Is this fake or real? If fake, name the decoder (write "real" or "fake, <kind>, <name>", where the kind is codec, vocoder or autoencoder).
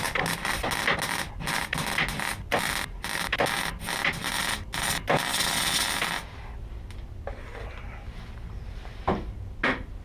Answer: real